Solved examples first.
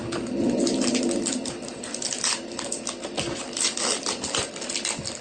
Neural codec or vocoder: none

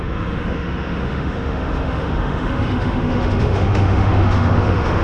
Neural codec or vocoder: autoencoder, DAC-VAE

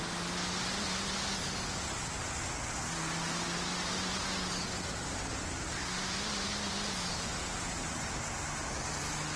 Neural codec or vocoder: none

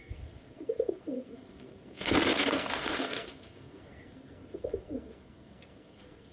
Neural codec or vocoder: codec, SNAC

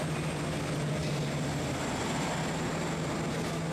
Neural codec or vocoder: none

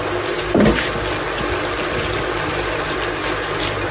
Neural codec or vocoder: none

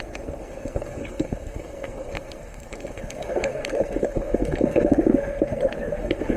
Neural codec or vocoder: codec, SNAC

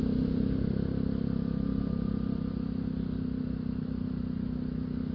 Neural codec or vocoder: none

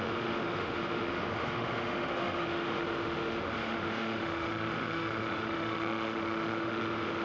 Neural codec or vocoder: autoencoder, DAC-VAE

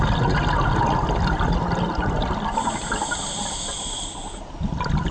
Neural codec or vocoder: none